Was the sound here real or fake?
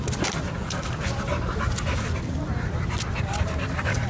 real